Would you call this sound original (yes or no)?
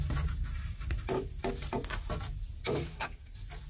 yes